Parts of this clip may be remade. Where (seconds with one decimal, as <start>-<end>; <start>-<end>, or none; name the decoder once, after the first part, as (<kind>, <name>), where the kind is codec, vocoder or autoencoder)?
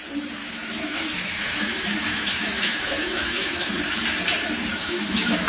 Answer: 0.4-3.7 (autoencoder, DAC-VAE); 4.8-5.5